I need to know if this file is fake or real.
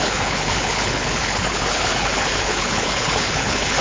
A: fake